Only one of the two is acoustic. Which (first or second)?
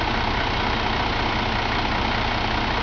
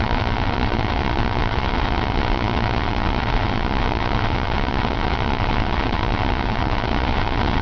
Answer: first